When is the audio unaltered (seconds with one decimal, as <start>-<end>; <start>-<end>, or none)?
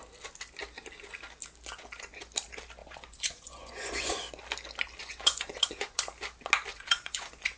0.0-2.8; 4.2-5.0; 6.0-6.7